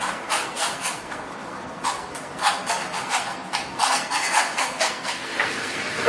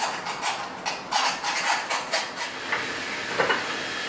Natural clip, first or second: second